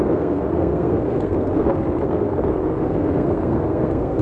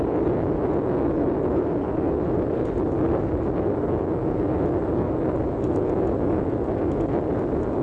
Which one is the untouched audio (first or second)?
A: second